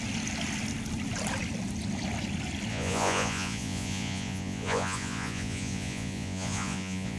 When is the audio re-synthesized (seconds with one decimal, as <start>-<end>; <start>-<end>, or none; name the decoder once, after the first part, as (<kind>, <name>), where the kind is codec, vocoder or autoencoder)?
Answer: 2.7-7.2 (vocoder, Vocos)